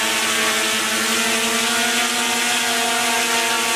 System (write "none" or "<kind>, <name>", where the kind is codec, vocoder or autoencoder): none